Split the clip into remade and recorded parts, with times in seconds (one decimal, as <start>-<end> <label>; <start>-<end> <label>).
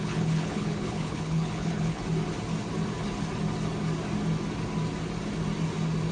0.0-2.0 remade; 2.0-6.1 recorded